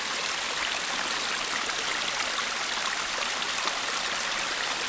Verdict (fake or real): real